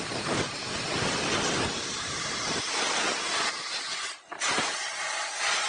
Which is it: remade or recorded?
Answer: recorded